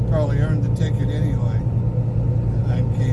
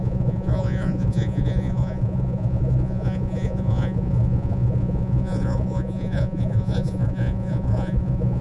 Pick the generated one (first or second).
second